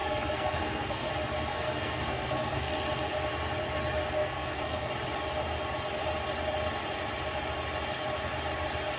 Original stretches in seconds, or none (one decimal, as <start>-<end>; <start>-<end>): 1.1-1.5; 2.7-4.2; 4.9-9.0